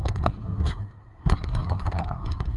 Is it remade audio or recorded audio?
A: remade